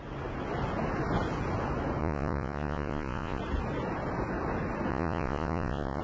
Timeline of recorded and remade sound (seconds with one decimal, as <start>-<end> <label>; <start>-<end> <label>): 0.0-2.0 recorded; 2.0-3.4 remade; 3.4-4.9 recorded; 4.9-6.0 remade